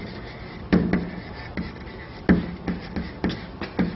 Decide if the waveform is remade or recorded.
recorded